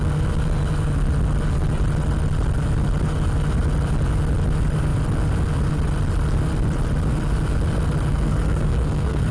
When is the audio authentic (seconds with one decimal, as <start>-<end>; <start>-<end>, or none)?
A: 0.0-8.1